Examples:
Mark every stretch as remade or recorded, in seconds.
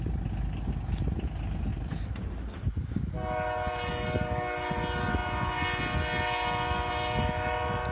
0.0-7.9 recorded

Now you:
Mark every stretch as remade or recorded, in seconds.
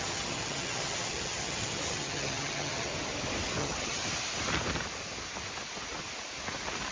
0.0-2.9 remade; 2.9-3.6 recorded; 3.6-4.0 remade; 4.0-6.9 recorded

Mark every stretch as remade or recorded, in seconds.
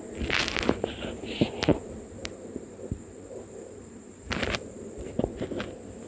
0.0-2.2 recorded; 2.2-5.2 remade; 5.2-6.1 recorded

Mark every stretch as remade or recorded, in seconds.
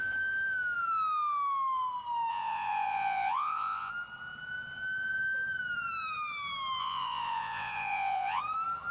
0.0-2.3 recorded; 2.3-3.9 remade; 3.9-6.8 recorded; 6.8-8.4 remade; 8.4-8.9 recorded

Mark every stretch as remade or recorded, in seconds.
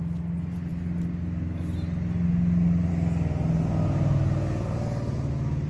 0.0-5.7 recorded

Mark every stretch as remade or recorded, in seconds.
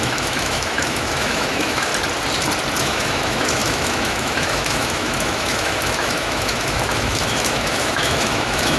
0.0-1.9 remade; 1.9-2.8 recorded; 2.8-8.8 remade